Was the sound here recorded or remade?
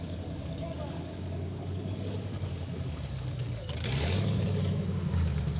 remade